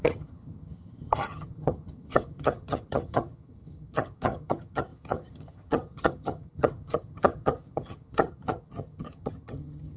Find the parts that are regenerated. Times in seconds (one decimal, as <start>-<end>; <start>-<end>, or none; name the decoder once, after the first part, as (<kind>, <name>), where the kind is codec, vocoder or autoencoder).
0.0-10.0 (vocoder, HiFi-GAN)